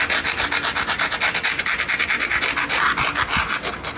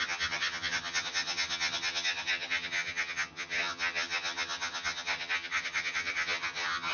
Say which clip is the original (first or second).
first